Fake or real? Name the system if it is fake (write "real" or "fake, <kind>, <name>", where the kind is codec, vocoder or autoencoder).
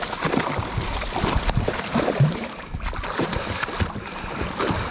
real